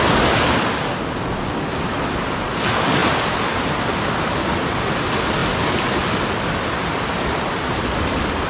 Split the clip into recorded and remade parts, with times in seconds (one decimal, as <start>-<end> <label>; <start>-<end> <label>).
0.0-8.5 recorded